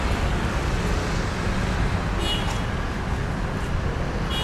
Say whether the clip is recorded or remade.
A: recorded